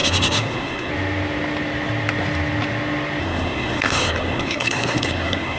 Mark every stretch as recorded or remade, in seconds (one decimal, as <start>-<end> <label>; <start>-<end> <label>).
0.0-0.9 remade; 0.9-3.2 recorded; 3.2-5.6 remade